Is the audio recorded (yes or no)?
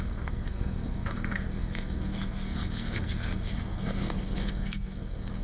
no